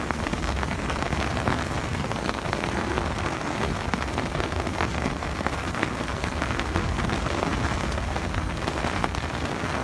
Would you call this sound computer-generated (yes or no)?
yes